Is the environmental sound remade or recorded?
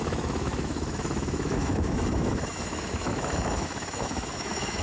remade